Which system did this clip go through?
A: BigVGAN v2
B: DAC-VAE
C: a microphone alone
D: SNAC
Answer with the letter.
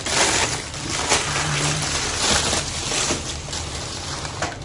C